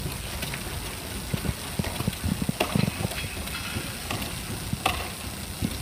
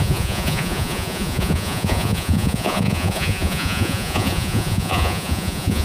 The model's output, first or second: second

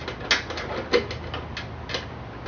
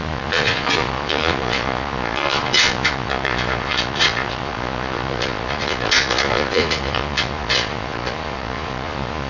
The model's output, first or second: second